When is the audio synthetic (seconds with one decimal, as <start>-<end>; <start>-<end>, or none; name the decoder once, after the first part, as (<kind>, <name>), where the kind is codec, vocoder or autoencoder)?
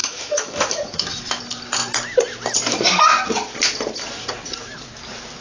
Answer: 0.0-1.4 (autoencoder, DAC-VAE)